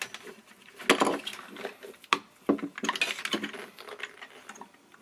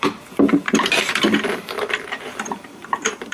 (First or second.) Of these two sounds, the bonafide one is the first